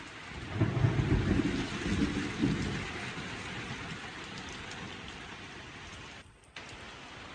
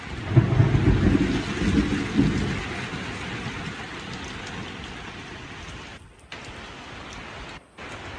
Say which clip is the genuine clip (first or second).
second